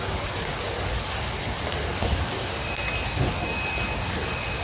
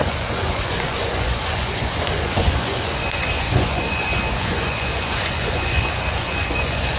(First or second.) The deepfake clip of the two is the second